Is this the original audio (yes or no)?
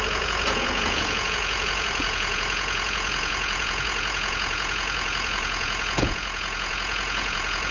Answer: no